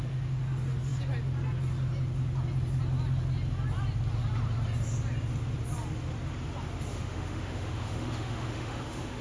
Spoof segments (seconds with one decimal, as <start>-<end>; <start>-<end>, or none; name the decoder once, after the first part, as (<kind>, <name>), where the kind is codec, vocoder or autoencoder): 6.9-9.2 (autoencoder, DAC-VAE)